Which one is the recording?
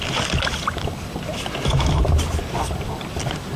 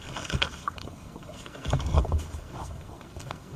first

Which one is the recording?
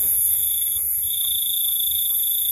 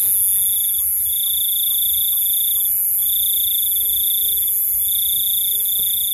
second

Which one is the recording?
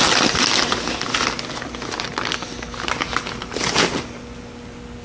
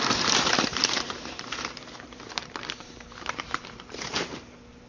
first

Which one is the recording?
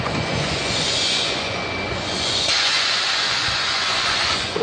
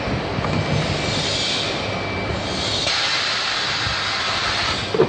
second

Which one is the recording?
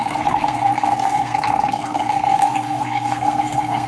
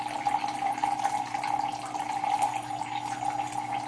second